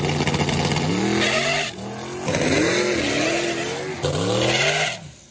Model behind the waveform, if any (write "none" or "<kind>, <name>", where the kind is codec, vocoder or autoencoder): none